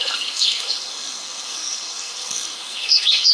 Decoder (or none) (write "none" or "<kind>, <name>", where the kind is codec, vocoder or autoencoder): codec, SNAC